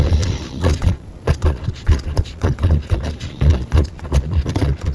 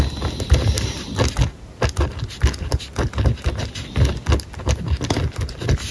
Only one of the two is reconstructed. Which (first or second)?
first